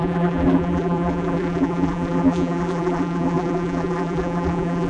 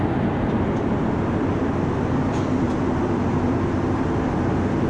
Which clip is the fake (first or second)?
first